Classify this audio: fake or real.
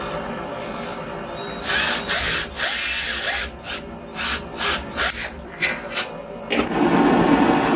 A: real